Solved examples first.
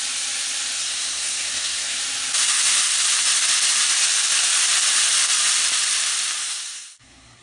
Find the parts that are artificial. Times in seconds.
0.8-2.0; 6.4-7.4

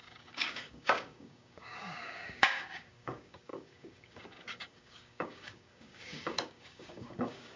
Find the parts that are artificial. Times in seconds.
0.0-7.6

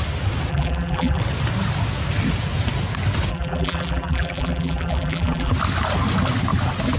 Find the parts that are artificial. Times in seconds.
0.5-1.2; 3.3-5.5